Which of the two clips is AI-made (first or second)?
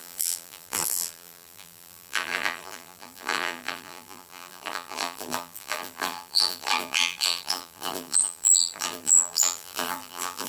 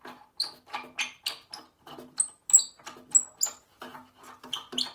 first